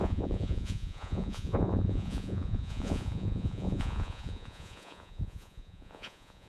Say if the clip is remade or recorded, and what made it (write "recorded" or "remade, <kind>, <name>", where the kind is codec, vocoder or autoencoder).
remade, vocoder, Vocos